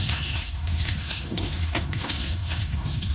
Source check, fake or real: fake